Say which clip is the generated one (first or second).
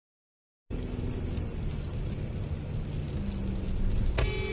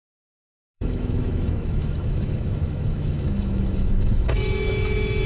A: second